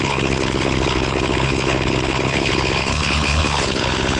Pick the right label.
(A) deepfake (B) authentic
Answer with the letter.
A